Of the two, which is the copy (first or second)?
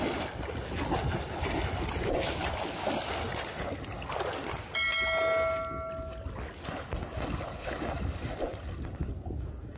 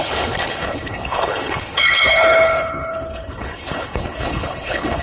second